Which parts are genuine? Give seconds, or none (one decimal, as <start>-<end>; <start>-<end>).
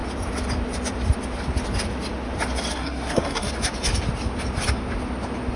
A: 0.0-2.7; 3.5-5.6